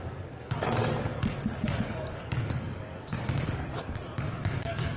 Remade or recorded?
remade